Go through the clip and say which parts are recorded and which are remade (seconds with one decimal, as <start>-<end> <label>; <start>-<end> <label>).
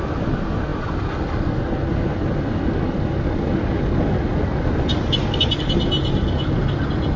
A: 0.0-7.2 recorded